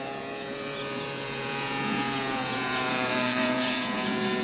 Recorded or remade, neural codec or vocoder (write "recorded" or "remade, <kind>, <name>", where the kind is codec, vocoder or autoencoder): remade, vocoder, Vocos